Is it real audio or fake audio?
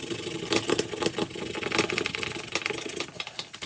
real